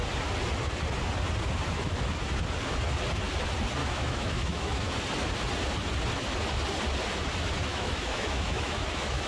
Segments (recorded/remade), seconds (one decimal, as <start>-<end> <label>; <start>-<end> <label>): 0.0-3.8 recorded; 3.8-4.9 remade; 4.9-7.7 recorded; 7.7-9.3 remade